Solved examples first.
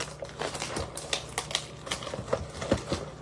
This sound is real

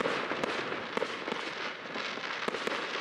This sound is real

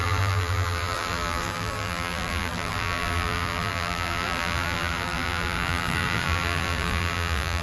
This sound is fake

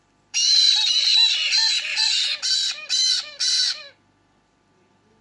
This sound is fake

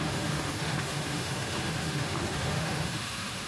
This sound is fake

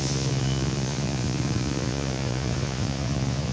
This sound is fake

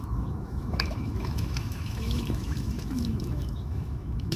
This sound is fake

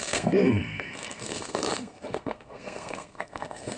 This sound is fake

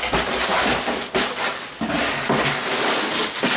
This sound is real